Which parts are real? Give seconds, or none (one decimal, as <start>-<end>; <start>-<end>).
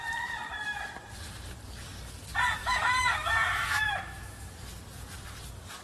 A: 0.0-2.6; 4.4-5.8